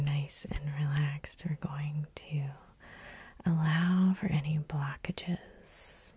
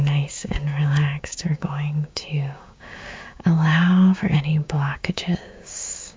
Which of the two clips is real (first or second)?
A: first